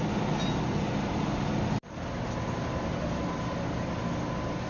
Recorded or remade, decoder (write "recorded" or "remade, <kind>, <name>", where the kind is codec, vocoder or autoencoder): recorded